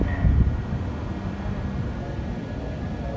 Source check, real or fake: real